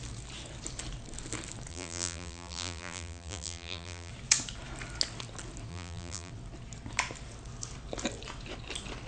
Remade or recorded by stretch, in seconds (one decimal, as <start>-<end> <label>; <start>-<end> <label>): 0.0-1.7 recorded; 1.7-4.1 remade; 4.1-5.7 recorded; 5.7-6.3 remade; 6.3-9.1 recorded